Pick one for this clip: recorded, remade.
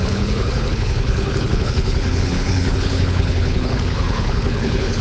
remade